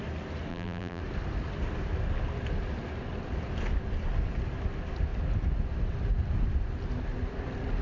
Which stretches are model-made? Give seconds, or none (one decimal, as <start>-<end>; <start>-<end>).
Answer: 0.5-1.0